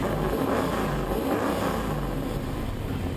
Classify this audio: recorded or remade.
recorded